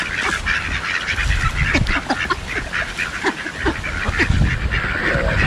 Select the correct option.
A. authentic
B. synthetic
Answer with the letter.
A